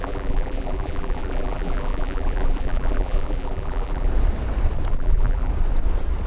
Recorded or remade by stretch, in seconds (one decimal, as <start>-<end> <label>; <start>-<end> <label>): 0.0-4.1 remade; 4.1-4.9 recorded; 4.9-5.5 remade; 5.5-6.3 recorded

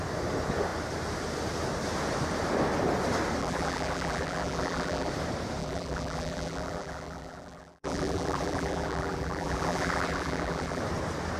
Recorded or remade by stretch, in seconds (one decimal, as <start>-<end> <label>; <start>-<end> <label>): 0.0-3.4 recorded; 3.4-5.1 remade; 5.1-5.6 recorded; 5.6-10.8 remade; 10.8-11.4 recorded

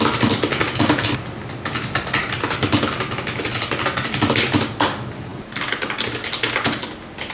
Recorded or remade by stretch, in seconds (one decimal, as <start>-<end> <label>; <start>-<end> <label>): 0.0-7.3 recorded

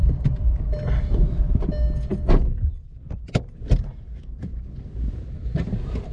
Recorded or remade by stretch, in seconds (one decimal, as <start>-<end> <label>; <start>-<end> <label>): 0.0-1.5 remade; 1.5-6.1 recorded

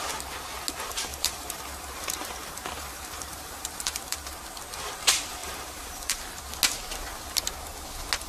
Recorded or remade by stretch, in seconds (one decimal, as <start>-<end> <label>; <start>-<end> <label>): 0.0-1.1 recorded; 1.1-4.4 remade; 4.4-5.4 recorded; 5.4-6.2 remade; 6.2-8.3 recorded

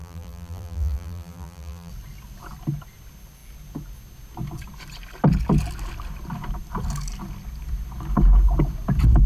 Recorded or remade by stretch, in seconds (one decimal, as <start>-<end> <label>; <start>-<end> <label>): 0.0-1.9 remade; 1.9-9.3 recorded

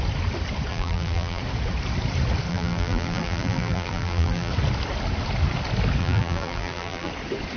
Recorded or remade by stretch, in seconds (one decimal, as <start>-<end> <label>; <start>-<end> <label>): 0.0-0.7 recorded; 0.7-1.4 remade; 1.4-2.5 recorded; 2.5-4.5 remade; 4.5-6.0 recorded; 6.0-7.1 remade; 7.1-7.6 recorded